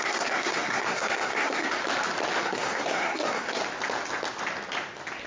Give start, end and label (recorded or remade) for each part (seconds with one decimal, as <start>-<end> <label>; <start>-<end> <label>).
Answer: 0.0-1.8 remade; 1.8-2.4 recorded; 2.4-3.6 remade; 3.6-5.3 recorded